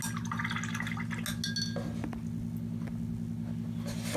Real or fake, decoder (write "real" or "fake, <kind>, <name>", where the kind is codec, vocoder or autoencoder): real